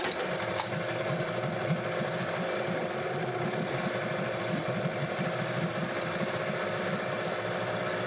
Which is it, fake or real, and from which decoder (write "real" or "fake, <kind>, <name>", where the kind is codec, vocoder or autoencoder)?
fake, vocoder, BigVGAN v2